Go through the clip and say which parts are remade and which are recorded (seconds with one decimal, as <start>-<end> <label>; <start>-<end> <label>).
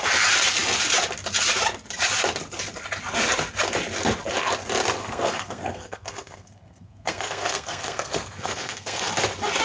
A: 0.0-5.0 recorded; 5.0-9.1 remade; 9.1-9.6 recorded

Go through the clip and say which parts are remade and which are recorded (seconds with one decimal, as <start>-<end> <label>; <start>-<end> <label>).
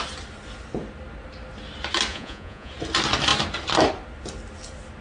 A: 0.0-2.1 recorded; 2.1-2.7 remade; 2.7-5.0 recorded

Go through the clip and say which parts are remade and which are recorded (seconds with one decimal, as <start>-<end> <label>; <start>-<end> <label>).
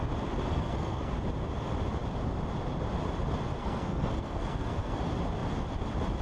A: 0.0-0.5 recorded; 0.5-1.1 remade; 1.1-3.6 recorded; 3.6-5.0 remade; 5.0-6.2 recorded